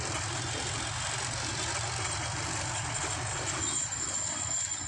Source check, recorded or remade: recorded